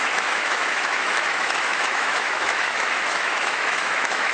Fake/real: fake